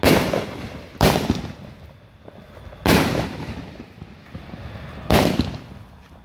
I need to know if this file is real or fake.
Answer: real